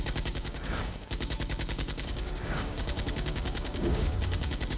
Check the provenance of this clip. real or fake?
fake